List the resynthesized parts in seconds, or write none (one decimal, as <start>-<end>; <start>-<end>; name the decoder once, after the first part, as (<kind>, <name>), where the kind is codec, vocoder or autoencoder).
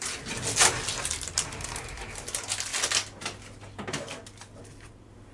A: none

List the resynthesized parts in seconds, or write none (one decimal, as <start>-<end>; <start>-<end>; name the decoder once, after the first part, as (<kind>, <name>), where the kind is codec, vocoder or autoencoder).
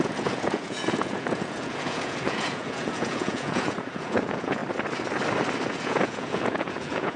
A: 0.0-4.6 (vocoder, Vocos); 5.7-7.2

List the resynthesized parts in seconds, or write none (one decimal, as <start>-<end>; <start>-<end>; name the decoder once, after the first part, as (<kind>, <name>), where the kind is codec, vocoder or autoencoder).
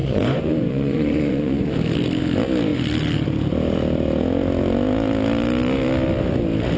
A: 0.0-1.7 (vocoder, Vocos)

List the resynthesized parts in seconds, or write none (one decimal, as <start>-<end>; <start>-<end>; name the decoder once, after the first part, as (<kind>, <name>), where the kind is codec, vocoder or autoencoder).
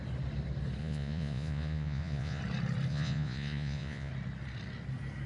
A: 0.8-2.4 (vocoder, Vocos); 2.9-4.1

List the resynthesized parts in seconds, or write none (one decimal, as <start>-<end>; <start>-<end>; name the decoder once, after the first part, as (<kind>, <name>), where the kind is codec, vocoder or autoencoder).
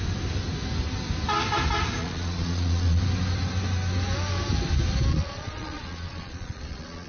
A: 2.0-3.0 (vocoder, Vocos); 5.1-7.1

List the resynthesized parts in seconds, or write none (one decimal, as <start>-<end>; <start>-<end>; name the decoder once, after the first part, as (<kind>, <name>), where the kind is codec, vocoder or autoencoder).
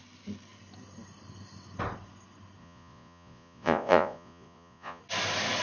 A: 2.6-5.0 (vocoder, Vocos)